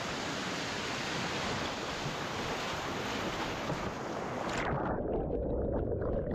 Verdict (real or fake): real